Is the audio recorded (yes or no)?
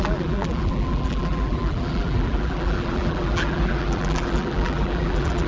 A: no